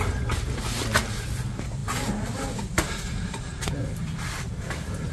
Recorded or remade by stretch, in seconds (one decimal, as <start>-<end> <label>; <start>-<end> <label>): 0.0-5.1 recorded